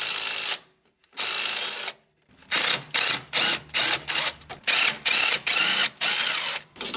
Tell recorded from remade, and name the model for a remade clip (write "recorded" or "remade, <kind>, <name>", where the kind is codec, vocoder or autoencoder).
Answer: recorded